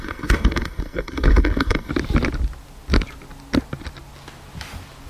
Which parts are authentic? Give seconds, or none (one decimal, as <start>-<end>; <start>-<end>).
1.9-5.1